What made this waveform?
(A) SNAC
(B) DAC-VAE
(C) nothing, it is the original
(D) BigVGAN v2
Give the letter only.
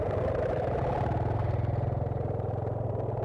C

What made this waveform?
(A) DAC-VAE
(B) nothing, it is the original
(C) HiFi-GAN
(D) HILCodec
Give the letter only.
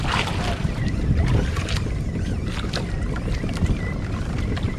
B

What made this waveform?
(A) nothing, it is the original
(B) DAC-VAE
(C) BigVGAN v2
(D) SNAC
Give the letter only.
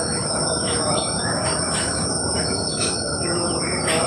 B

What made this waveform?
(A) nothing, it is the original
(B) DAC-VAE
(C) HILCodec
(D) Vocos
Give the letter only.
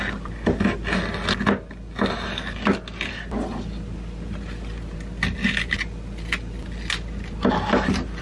A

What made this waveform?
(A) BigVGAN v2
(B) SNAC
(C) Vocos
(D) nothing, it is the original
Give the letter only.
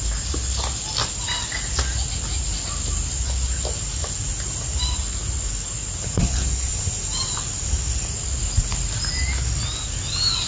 D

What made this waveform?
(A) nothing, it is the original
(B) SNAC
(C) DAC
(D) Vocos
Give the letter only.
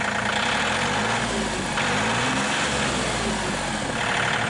A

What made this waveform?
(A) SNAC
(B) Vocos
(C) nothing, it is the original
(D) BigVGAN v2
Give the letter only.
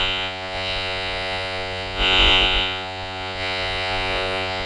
B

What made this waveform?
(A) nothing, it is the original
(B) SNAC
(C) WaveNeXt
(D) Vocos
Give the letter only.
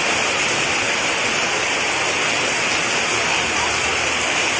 A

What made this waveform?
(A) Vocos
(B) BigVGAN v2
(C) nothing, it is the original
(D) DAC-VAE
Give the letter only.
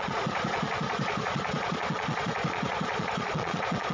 A